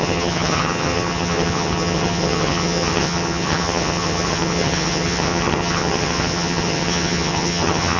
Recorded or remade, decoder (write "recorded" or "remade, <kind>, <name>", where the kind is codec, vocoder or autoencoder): remade, vocoder, HiFi-GAN